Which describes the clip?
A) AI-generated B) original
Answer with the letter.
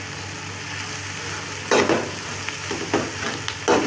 B